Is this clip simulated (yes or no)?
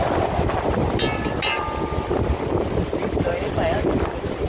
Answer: no